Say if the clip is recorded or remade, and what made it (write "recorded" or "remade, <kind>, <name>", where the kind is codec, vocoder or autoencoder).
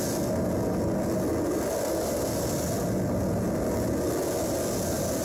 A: recorded